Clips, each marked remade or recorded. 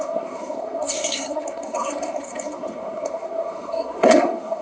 remade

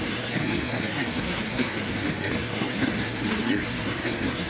remade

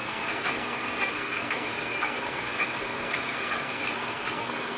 remade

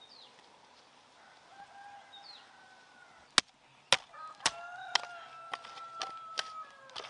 recorded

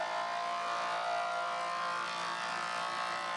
recorded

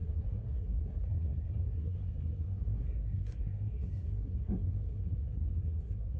remade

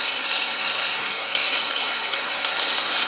remade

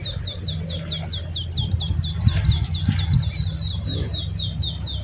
recorded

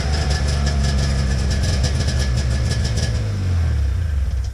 recorded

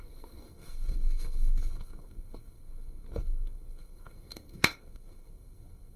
remade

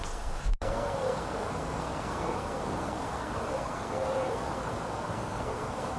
remade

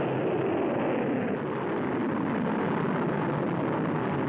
recorded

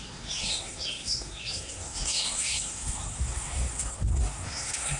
remade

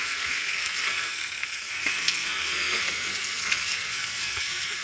remade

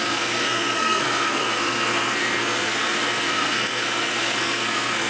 remade